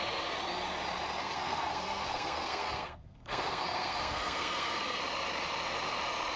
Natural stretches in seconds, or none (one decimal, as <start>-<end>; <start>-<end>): 0.0-1.2; 5.0-6.4